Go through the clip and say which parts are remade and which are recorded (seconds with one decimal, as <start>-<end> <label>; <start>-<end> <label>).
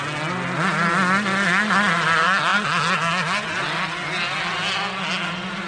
0.0-5.7 recorded